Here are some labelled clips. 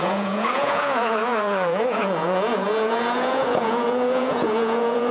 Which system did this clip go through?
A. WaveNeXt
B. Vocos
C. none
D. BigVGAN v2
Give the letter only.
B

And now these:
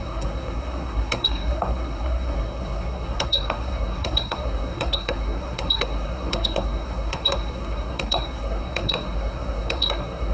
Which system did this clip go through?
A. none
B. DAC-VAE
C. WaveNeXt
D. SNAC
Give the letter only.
D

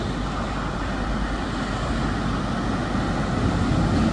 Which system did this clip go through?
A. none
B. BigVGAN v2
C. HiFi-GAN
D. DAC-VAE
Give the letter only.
A